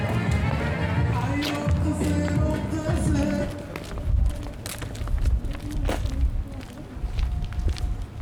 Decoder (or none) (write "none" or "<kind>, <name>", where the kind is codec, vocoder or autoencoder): none